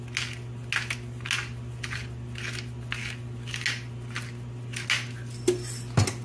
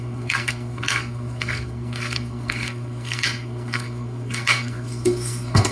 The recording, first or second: first